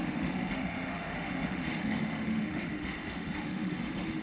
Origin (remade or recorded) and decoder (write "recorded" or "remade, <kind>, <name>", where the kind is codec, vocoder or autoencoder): remade, autoencoder, DAC-VAE